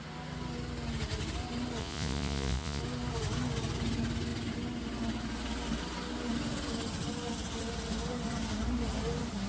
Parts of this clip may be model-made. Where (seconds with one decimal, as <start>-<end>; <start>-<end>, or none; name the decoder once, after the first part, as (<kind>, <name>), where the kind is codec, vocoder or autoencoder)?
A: 1.8-2.8 (vocoder, Vocos)